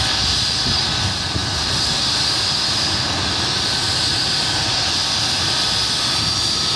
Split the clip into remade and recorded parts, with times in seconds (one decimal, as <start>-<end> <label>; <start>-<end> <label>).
0.0-6.8 recorded